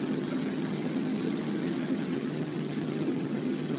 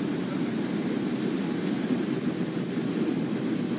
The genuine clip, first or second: second